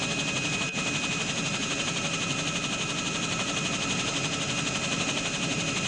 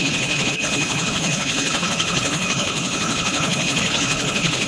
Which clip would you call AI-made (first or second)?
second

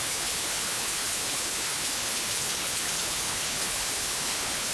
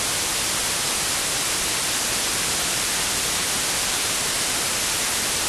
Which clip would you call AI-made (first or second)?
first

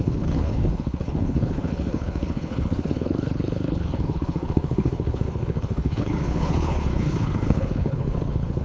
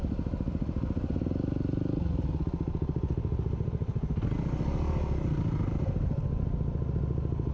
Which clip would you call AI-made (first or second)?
first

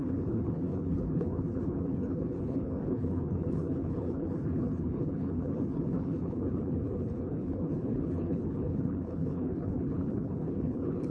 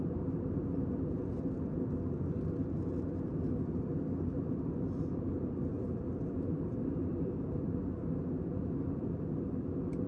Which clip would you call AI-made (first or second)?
first